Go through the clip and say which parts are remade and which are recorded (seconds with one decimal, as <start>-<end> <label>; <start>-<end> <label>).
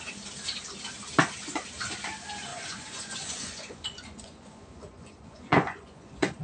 0.0-2.5 recorded; 2.5-6.4 remade